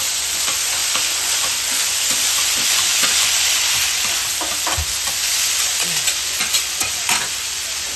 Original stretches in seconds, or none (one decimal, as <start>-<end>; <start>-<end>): 4.2-4.8